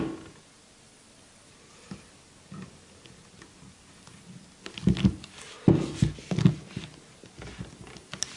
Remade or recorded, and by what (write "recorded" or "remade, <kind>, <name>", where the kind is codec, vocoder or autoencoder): recorded